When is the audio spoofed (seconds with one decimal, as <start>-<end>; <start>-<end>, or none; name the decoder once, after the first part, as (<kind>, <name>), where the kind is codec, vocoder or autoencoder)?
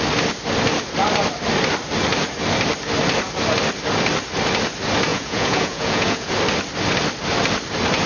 5.1-6.3 (vocoder, Vocos)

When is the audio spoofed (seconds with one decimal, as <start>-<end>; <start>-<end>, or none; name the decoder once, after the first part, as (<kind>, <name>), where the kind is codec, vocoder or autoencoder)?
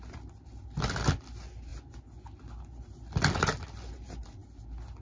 none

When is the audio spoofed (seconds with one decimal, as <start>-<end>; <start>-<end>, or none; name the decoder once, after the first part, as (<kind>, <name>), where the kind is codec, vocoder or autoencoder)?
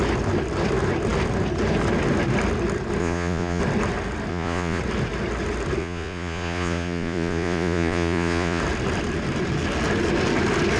3.0-3.6 (vocoder, Vocos); 4.3-4.8; 5.8-8.6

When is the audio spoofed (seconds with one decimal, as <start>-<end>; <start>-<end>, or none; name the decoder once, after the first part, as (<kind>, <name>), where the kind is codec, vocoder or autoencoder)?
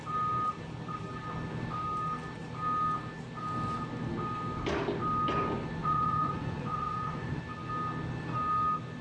5.8-7.4 (vocoder, Vocos)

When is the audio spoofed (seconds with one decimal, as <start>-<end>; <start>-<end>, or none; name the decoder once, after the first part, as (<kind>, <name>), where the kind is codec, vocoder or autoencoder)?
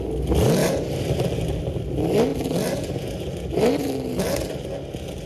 none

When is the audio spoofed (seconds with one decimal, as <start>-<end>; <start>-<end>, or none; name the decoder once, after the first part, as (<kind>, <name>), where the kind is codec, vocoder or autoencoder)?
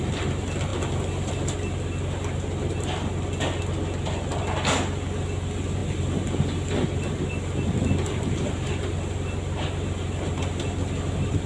none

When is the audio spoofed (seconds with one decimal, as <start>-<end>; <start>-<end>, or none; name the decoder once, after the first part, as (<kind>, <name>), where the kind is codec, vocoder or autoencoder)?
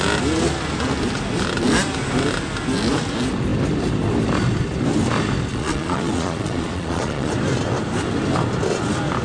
5.5-7.3 (vocoder, Vocos)